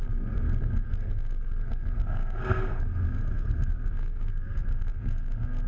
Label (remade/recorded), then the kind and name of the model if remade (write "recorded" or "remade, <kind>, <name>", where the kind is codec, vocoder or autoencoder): remade, codec, SNAC